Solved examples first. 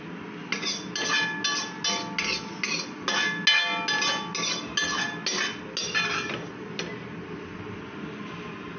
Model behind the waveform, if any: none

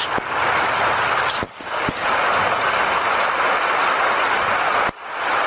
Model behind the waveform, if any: none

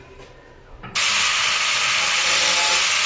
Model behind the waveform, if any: none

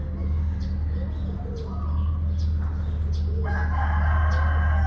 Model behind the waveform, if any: none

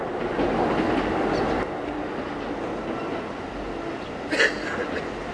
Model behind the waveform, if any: none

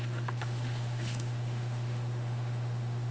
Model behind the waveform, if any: autoencoder, DAC-VAE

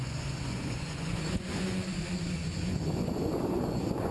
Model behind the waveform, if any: vocoder, Vocos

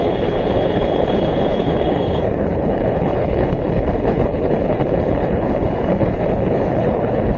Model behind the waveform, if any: codec, HILCodec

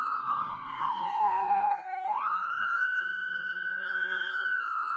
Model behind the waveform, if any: codec, SNAC